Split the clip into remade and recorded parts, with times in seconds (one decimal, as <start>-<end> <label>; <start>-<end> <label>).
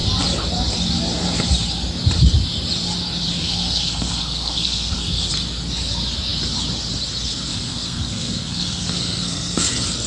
0.0-3.4 recorded; 3.4-5.3 remade; 5.3-7.5 recorded; 7.5-9.7 remade; 9.7-10.1 recorded